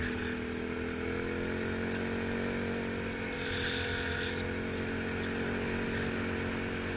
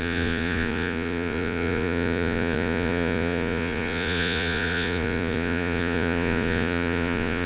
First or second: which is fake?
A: second